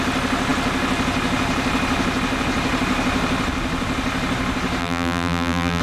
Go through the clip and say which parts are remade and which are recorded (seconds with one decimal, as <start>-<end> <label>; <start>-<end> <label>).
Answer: 0.0-4.8 recorded; 4.8-5.8 remade